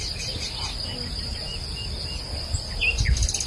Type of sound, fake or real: real